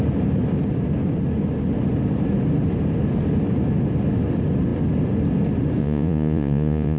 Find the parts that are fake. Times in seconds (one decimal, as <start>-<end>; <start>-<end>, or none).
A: 5.8-7.0